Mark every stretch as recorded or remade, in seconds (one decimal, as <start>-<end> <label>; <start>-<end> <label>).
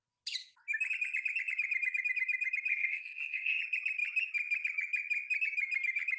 0.0-2.7 recorded; 2.7-3.6 remade; 3.6-6.2 recorded